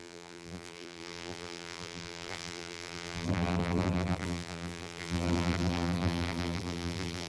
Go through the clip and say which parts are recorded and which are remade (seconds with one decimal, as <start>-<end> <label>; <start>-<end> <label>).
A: 0.0-7.3 remade